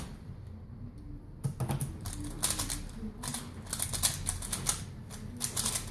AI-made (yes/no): no